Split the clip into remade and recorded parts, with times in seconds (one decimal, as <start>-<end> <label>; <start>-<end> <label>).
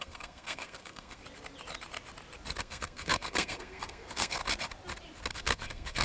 0.0-1.2 remade; 1.2-2.6 recorded; 2.6-4.4 remade; 4.4-5.3 recorded; 5.3-6.0 remade